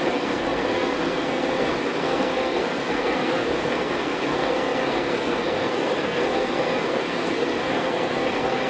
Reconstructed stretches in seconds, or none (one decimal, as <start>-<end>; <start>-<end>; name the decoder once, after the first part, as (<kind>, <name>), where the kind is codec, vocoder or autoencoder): 0.0-8.7 (codec, SNAC)